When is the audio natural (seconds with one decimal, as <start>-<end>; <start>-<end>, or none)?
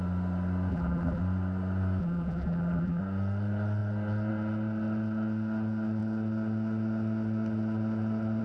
0.0-0.7; 1.2-2.0; 3.0-8.4